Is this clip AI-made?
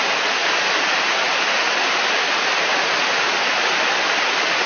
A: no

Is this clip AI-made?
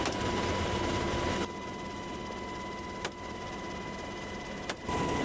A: no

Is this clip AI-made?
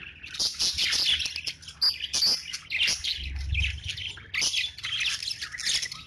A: no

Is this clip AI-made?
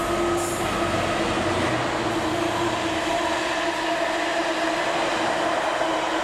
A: no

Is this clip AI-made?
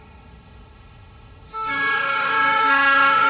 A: yes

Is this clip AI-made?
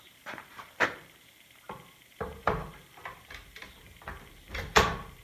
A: yes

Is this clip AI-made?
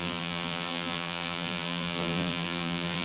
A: yes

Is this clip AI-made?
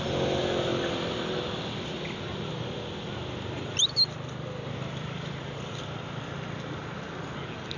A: no